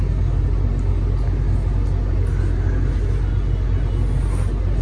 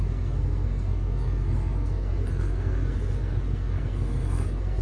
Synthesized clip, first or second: second